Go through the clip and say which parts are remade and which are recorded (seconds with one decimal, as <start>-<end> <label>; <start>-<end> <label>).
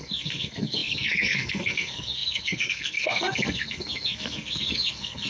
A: 0.0-5.3 remade